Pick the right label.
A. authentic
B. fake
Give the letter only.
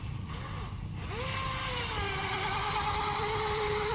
A